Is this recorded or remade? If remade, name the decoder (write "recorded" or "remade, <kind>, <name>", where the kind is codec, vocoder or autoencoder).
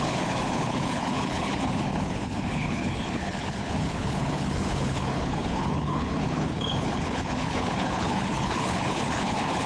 remade, codec, HILCodec